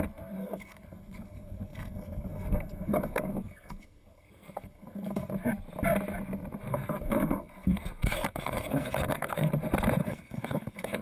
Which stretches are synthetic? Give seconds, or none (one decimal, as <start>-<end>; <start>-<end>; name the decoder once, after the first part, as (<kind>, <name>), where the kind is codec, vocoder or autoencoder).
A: 0.4-5.3 (codec, SNAC); 6.7-9.5; 10.0-11.0